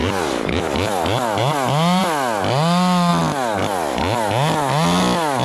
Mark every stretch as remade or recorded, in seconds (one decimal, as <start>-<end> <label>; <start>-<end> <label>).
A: 0.0-0.6 remade; 0.6-5.4 recorded